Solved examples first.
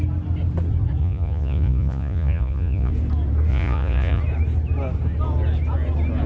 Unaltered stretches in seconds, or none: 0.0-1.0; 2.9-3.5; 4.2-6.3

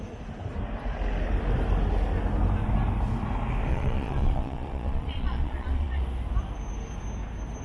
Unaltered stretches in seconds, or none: 0.0-3.7; 6.0-7.6

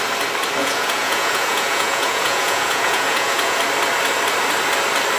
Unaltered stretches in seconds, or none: 0.0-0.6; 3.6-5.2

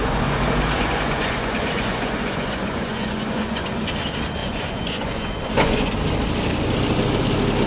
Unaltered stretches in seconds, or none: 3.7-4.4; 5.9-7.7